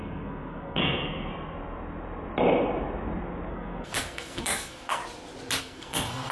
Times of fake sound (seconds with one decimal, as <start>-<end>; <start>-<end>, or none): 0.0-1.3; 3.5-5.0; 5.6-6.3